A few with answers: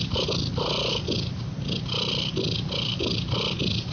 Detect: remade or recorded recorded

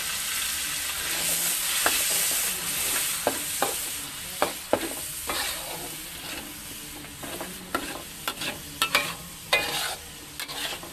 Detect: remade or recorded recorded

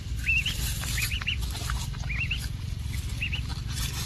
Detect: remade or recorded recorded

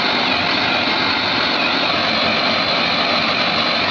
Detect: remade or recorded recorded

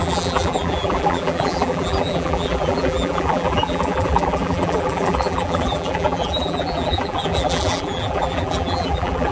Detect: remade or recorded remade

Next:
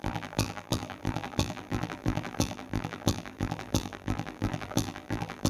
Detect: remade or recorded remade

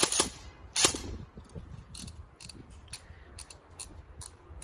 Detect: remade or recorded recorded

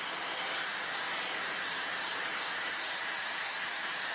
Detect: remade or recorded recorded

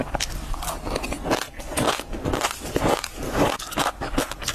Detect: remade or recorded recorded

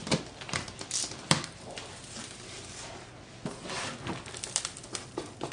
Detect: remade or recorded recorded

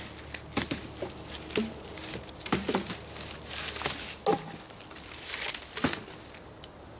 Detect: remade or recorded recorded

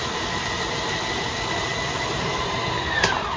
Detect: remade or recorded remade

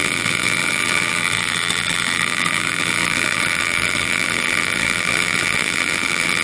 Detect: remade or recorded remade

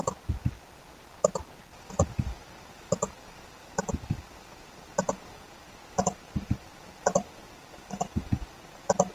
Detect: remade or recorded remade